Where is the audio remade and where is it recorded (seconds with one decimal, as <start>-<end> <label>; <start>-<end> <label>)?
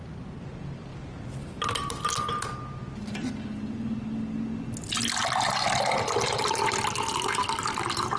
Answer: 0.0-8.2 recorded